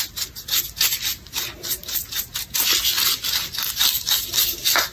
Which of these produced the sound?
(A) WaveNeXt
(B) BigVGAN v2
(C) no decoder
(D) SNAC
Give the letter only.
C